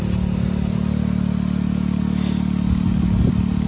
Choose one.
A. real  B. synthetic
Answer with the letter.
A